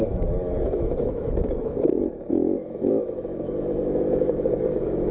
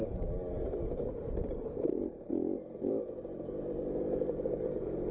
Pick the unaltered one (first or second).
second